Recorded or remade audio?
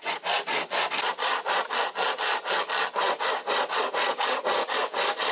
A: recorded